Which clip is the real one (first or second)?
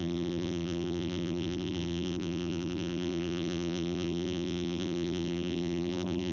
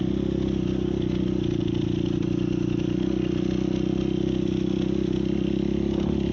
second